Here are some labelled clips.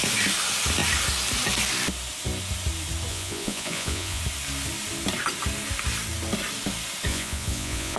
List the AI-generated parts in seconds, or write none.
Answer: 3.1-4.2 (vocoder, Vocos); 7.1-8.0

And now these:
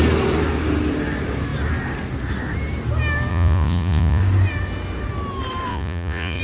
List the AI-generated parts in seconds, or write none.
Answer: 3.3-4.2 (vocoder, Vocos); 5.7-6.4

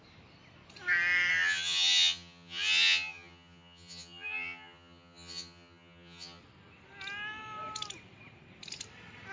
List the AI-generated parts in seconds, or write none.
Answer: 1.3-6.4 (vocoder, HiFi-GAN)

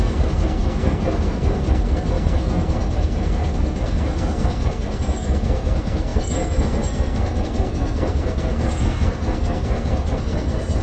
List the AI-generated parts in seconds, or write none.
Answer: 0.0-10.8 (codec, SNAC)

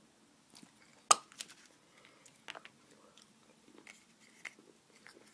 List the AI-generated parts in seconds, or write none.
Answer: none